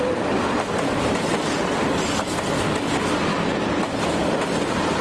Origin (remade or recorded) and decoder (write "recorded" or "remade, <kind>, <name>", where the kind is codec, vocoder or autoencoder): recorded